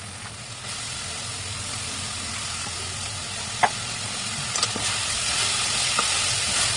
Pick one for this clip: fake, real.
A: real